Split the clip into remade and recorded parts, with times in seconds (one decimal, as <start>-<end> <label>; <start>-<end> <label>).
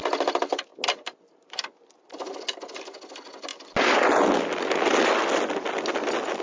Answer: 0.0-6.4 recorded